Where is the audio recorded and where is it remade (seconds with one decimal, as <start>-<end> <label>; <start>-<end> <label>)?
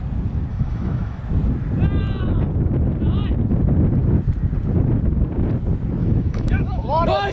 0.0-0.5 recorded; 0.5-1.2 remade; 1.2-6.0 recorded; 6.0-7.3 remade